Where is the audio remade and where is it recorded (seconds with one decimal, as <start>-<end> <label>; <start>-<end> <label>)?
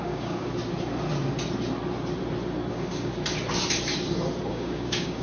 0.0-0.5 remade; 0.5-2.7 recorded; 2.7-3.1 remade; 3.1-4.5 recorded; 4.5-5.2 remade